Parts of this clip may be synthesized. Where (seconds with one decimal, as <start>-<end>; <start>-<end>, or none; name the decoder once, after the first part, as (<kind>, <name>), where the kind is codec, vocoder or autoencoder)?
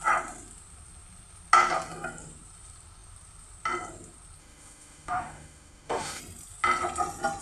4.4-6.2 (autoencoder, DAC-VAE)